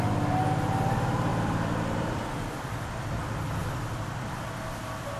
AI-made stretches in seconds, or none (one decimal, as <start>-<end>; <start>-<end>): 1.3-3.0; 3.6-4.3

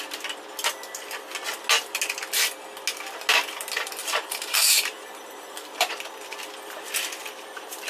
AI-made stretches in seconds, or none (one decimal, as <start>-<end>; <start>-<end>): 4.0-5.9; 7.2-7.9